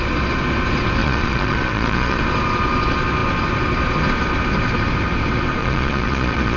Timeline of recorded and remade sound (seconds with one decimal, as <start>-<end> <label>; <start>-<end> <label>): 0.0-1.0 recorded; 1.0-2.2 remade; 2.2-5.6 recorded; 5.6-6.6 remade